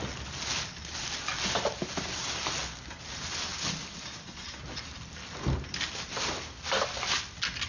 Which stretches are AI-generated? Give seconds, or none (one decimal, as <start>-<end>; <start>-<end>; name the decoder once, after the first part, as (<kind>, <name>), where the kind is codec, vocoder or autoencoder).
none